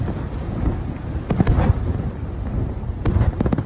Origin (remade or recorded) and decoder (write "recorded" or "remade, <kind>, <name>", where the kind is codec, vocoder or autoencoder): recorded